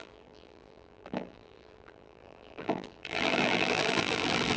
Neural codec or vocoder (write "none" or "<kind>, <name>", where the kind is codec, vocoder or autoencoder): vocoder, BigVGAN v2